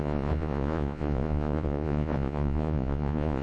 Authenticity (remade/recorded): remade